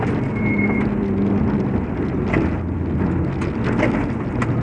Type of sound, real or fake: real